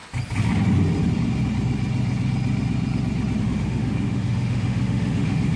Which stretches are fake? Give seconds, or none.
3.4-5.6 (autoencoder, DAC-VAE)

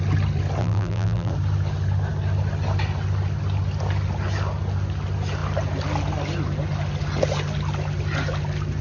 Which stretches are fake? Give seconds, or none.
0.6-1.3 (vocoder, BigVGAN v2)

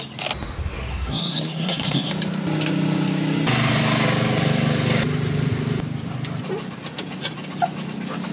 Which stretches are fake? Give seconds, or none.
0.9-2.1 (codec, SNAC)